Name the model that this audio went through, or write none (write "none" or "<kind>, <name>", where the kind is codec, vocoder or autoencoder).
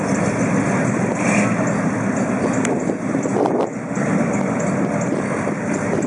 none